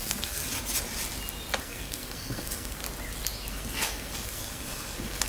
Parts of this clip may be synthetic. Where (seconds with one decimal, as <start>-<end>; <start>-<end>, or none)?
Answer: 0.0-0.4; 1.6-2.8; 3.5-5.3